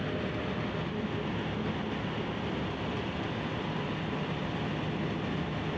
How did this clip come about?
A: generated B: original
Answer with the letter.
B